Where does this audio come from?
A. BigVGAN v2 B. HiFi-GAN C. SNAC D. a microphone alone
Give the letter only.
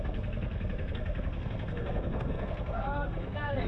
C